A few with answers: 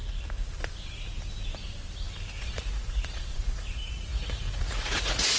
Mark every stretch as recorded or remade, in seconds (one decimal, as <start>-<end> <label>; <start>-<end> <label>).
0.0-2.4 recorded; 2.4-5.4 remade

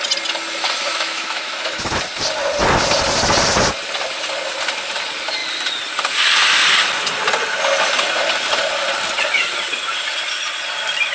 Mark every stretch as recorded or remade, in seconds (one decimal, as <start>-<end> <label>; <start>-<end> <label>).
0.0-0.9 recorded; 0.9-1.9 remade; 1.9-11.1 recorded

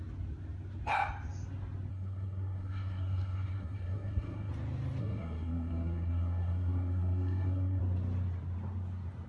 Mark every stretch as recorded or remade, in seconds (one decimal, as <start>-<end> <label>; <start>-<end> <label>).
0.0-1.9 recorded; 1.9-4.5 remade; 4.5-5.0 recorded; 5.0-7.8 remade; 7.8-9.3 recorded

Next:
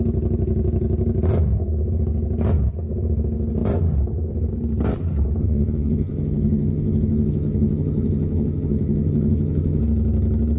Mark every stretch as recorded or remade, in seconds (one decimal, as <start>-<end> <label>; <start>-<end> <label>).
0.0-5.4 recorded; 5.4-9.8 remade; 9.8-10.6 recorded